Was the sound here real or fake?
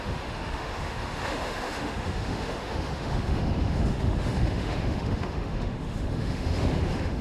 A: fake